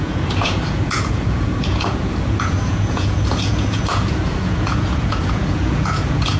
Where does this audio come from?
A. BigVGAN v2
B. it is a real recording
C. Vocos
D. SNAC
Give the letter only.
C